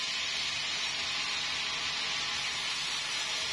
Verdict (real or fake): real